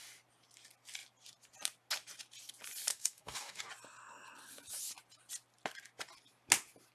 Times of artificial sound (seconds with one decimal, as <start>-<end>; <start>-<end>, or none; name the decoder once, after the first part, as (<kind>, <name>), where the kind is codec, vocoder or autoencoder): 2.9-3.7 (codec, DAC)